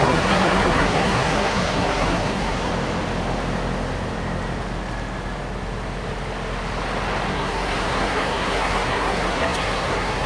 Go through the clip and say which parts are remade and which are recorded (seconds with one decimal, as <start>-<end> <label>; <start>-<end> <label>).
0.0-2.7 remade; 2.7-7.3 recorded; 7.3-10.3 remade